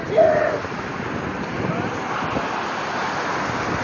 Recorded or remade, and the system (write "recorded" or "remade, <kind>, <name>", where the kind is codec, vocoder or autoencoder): recorded